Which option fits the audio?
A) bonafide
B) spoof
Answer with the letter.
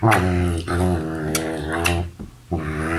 A